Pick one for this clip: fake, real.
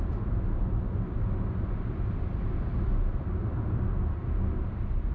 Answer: fake